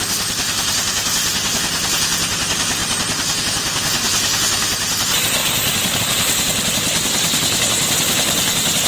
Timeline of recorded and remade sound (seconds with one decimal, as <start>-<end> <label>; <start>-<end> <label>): 0.0-8.9 recorded